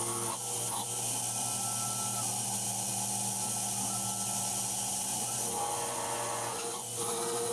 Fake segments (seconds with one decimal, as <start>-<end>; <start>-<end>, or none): 5.1-7.5